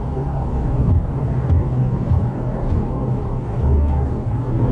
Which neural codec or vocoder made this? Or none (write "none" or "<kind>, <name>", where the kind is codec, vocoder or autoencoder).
codec, DAC